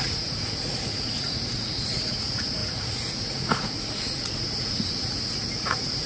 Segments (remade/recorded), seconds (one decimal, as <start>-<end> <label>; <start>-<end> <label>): 0.0-6.1 remade